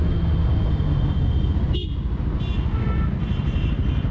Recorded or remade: recorded